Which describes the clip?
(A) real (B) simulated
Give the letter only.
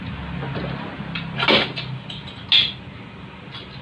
A